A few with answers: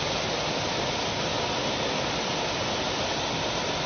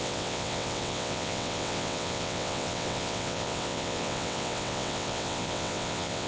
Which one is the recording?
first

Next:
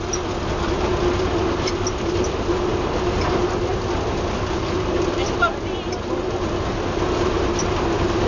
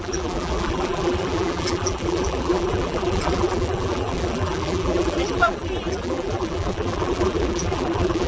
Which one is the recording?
first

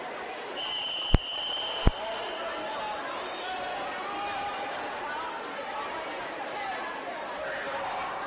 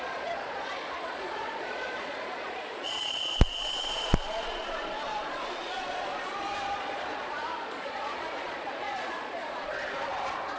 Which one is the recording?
first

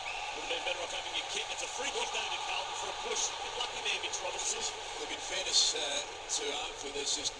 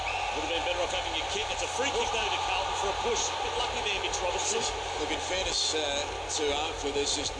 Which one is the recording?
second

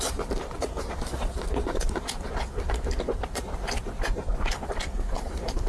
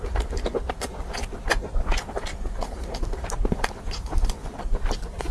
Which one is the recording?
second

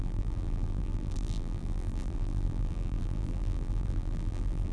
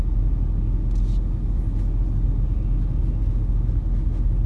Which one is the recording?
second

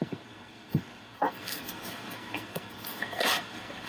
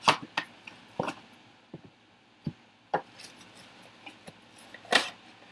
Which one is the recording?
second